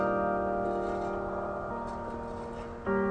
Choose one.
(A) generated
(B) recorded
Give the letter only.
B